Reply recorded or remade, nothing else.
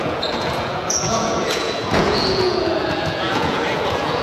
remade